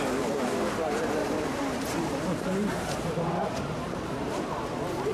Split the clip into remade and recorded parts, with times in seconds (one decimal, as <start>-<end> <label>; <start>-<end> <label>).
0.0-1.2 recorded; 1.2-4.3 remade; 4.3-5.1 recorded